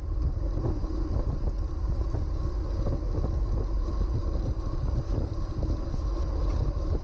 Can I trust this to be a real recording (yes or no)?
yes